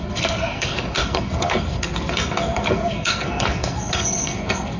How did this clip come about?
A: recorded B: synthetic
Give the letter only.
B